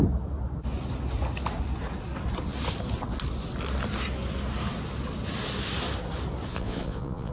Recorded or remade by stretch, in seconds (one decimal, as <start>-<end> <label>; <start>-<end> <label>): 0.0-6.5 recorded; 6.5-7.3 remade